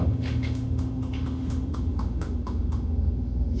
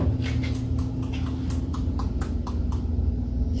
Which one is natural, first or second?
second